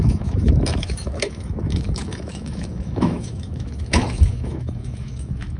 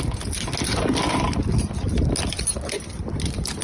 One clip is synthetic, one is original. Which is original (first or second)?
second